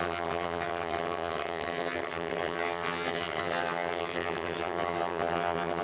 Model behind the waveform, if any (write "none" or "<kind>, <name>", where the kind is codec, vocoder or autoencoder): vocoder, HiFi-GAN